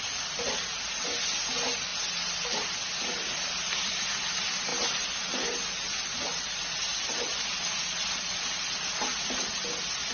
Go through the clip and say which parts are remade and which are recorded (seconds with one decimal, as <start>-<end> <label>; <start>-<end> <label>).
0.0-10.1 recorded